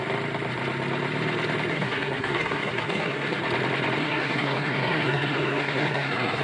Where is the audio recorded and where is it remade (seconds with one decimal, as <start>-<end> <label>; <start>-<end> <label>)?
0.0-1.7 recorded; 1.7-3.4 remade; 3.4-4.0 recorded; 4.0-6.4 remade